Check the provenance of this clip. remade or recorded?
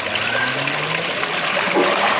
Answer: recorded